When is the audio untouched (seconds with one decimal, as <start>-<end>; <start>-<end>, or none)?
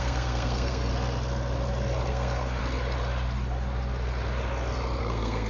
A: 0.9-2.1; 2.6-5.0